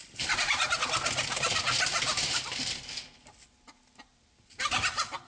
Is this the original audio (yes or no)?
yes